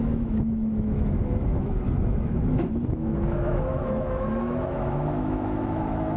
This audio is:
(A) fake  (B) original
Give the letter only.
A